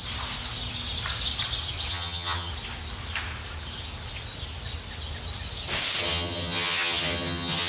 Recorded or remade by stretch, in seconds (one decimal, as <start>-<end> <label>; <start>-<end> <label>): 0.0-1.9 recorded; 1.9-2.5 remade; 2.5-6.0 recorded; 6.0-7.7 remade